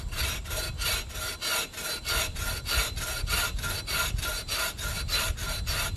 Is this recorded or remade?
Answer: recorded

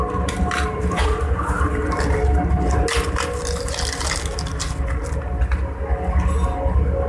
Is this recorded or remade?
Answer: recorded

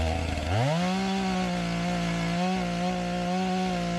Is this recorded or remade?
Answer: recorded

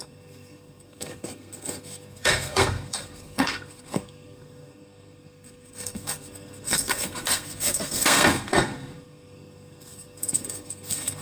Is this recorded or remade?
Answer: remade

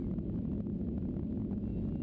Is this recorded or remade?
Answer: recorded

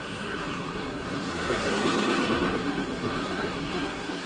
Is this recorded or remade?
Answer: remade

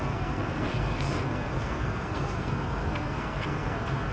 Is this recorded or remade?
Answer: remade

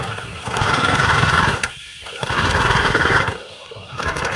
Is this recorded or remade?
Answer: remade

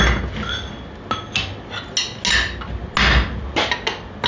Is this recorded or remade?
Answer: recorded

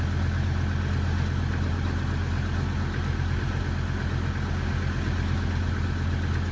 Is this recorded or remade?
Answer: recorded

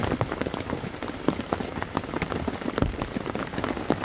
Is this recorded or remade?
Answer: recorded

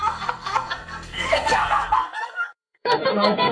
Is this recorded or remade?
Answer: remade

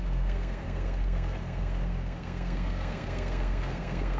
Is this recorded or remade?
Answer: remade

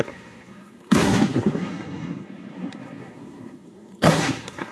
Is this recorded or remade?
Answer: remade